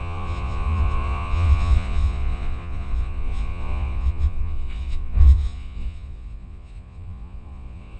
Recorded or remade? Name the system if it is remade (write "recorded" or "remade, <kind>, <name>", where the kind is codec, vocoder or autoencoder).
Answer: remade, vocoder, Vocos